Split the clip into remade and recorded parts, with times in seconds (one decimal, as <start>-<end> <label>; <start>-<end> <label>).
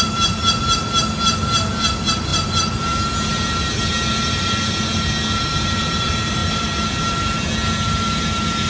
0.0-8.7 recorded